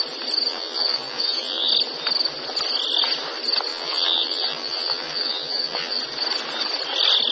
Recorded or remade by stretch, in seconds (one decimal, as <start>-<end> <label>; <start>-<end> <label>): 0.0-0.5 recorded; 0.5-1.7 remade; 1.7-3.7 recorded; 3.7-6.0 remade; 6.0-7.3 recorded